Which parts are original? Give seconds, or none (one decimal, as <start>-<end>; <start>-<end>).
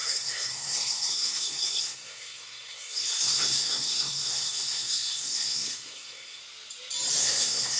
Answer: 6.4-7.2